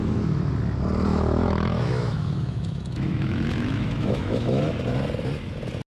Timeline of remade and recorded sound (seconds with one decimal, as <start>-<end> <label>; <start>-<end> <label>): 0.0-0.5 remade; 0.5-1.1 recorded; 1.1-4.6 remade; 4.6-5.9 recorded